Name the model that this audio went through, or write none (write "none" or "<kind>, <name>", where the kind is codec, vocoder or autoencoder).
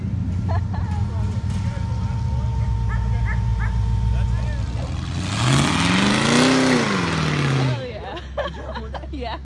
none